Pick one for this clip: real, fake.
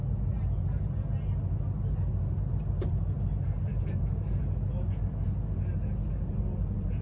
real